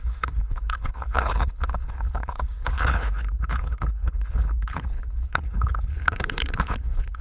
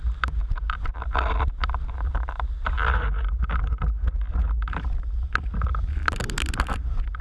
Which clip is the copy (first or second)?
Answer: first